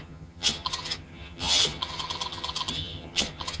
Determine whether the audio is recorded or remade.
remade